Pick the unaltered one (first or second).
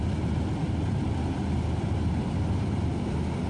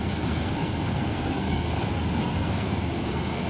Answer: first